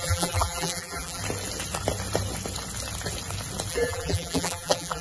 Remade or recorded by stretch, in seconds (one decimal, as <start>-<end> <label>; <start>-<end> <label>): 0.0-1.2 remade; 1.2-3.7 recorded; 3.7-5.0 remade